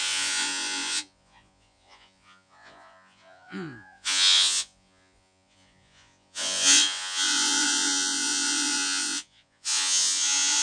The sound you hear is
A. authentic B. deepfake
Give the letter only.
B